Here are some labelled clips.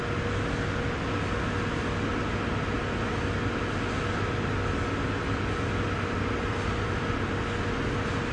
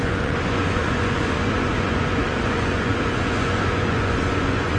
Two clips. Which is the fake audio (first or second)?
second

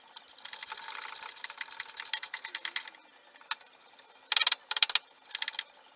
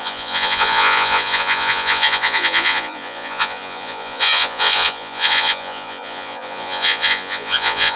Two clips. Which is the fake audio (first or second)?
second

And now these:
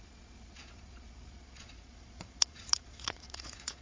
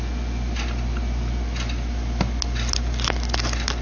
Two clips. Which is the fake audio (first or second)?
first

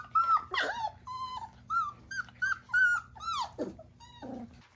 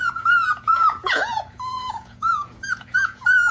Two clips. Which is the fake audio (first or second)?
second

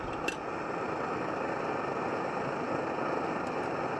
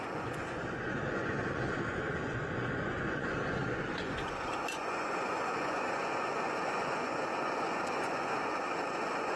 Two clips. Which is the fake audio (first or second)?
second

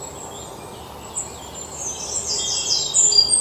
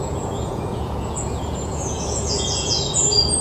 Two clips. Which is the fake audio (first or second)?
second